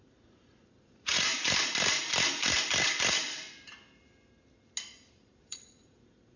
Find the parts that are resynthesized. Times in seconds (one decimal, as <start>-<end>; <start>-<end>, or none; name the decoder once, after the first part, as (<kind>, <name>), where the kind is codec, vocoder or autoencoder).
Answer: 0.0-1.3 (vocoder, Vocos); 5.1-6.4